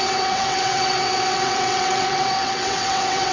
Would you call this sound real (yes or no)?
no